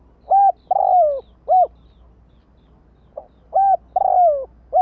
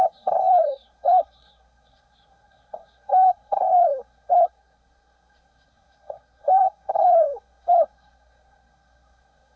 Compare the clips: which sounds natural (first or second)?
first